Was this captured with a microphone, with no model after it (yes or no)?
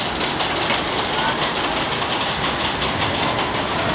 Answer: yes